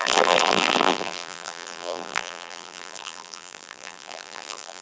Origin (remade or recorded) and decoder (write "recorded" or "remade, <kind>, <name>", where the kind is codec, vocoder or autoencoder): remade, vocoder, BigVGAN v2